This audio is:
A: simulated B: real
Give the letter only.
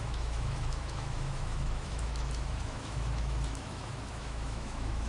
A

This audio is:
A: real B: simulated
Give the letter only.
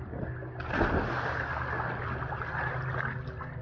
A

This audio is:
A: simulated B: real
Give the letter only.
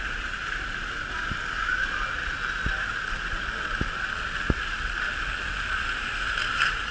B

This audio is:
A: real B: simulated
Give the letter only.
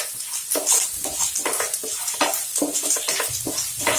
A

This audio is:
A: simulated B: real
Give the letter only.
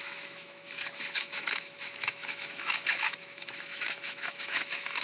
A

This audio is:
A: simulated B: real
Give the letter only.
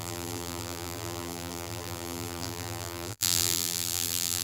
A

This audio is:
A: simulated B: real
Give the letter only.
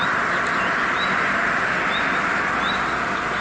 A